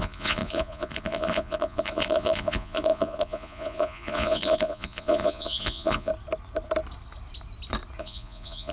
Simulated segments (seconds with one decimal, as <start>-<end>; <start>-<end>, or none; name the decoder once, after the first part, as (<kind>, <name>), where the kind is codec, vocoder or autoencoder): 0.0-6.1 (vocoder, Vocos); 8.0-8.7